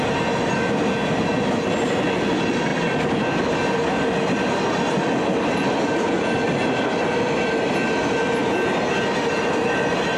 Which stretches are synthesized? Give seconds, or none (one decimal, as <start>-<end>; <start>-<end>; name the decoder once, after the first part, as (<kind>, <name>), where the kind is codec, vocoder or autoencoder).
none